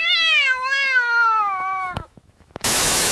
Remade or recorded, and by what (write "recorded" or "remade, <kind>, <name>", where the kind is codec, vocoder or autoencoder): remade, autoencoder, DAC-VAE